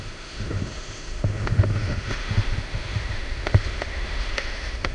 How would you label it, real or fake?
fake